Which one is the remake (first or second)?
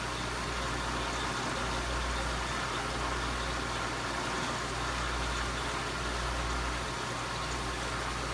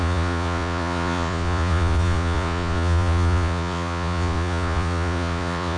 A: second